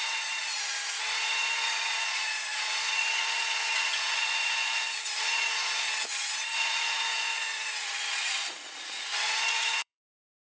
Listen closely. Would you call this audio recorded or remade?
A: remade